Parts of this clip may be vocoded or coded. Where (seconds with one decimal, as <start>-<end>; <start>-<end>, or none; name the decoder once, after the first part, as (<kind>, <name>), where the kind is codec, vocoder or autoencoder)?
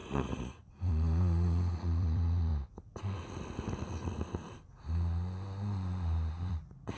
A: 0.0-2.5 (vocoder, Vocos); 6.5-7.0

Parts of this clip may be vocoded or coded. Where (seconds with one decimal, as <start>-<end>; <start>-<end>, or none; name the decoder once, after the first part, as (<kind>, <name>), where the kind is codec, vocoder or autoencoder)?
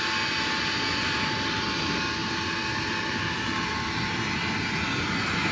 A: none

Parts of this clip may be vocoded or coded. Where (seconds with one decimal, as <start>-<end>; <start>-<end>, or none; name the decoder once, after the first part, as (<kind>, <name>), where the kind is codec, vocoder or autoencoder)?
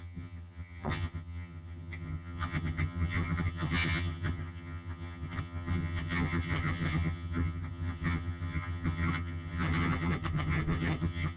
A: 0.0-11.4 (vocoder, HiFi-GAN)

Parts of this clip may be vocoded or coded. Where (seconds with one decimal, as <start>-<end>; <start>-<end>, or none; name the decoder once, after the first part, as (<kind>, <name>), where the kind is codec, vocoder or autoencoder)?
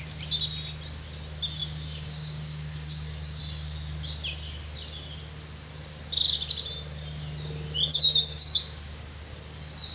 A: 1.6-3.4 (codec, DAC); 7.9-9.2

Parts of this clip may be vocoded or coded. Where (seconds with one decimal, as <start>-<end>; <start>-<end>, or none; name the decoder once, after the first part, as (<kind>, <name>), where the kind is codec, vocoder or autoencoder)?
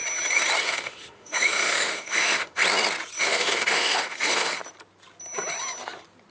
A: 0.6-2.6 (autoencoder, DAC-VAE); 3.2-4.6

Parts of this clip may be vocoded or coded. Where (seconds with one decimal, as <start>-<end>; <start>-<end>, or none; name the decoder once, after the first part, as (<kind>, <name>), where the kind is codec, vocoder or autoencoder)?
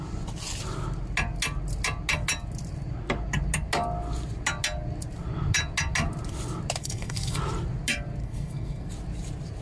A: 6.8-7.4 (codec, SNAC); 8.2-8.9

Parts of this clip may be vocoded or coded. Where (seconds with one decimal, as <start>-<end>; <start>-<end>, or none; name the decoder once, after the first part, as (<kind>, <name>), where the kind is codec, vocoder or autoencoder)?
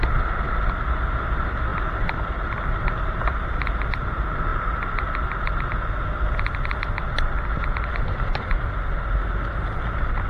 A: 1.7-3.5 (vocoder, BigVGAN v2)